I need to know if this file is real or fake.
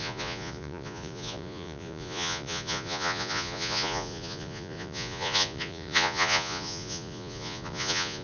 fake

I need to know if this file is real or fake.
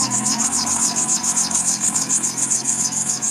fake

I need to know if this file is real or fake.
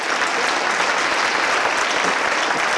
real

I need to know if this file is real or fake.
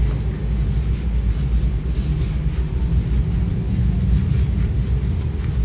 real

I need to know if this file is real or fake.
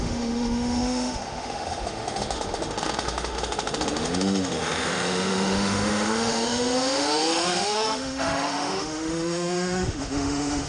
fake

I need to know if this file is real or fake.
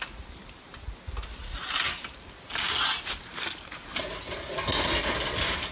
real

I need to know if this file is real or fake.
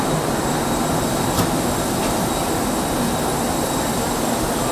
real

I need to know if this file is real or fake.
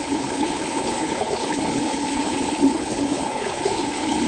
fake